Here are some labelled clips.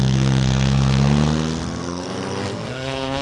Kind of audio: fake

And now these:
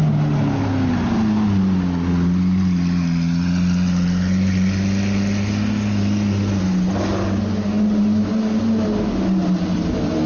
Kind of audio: real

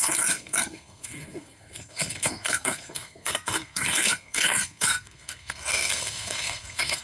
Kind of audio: fake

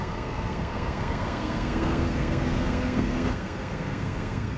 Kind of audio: fake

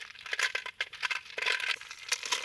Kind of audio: real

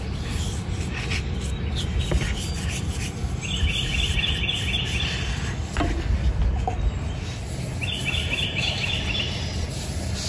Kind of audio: real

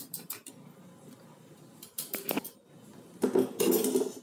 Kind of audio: real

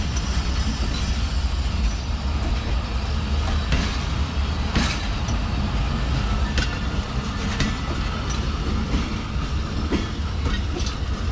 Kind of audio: real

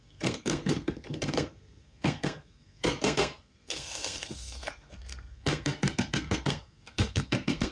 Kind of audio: fake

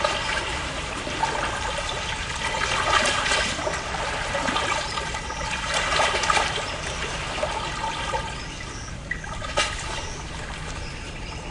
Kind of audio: real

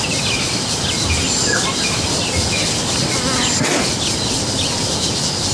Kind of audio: real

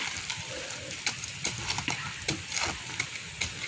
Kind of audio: real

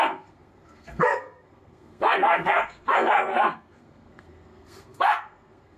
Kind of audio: fake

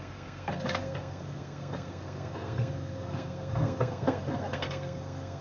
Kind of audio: fake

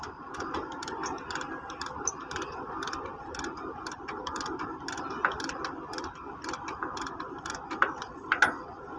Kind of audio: real